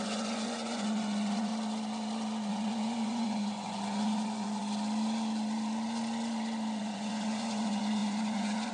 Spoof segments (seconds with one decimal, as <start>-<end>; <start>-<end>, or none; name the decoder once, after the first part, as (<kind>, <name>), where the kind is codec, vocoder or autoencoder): 0.0-1.5 (vocoder, Vocos); 2.5-4.6; 6.8-8.7